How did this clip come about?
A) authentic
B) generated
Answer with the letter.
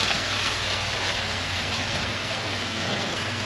B